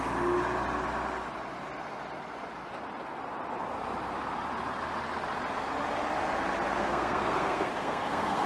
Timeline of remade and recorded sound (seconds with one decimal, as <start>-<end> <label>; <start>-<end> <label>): 0.0-6.8 recorded; 6.8-8.5 remade